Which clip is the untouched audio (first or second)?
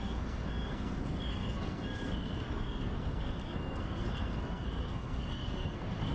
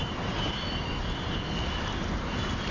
second